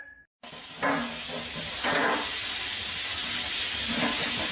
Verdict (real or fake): real